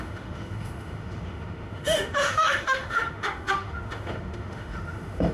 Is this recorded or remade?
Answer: remade